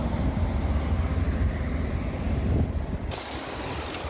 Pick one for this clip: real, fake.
real